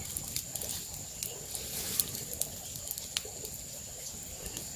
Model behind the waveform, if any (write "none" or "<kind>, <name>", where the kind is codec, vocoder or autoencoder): none